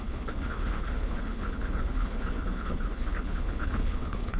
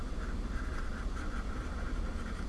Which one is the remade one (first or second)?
first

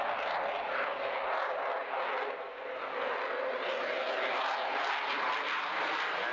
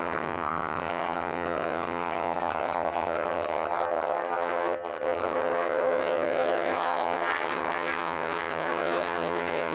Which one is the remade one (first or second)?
second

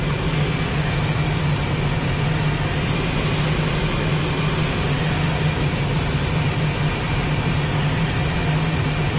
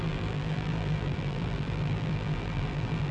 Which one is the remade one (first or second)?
second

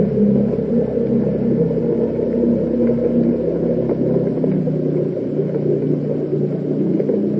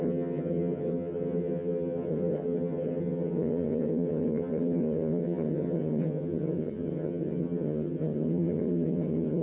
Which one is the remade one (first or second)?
second